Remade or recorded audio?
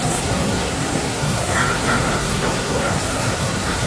remade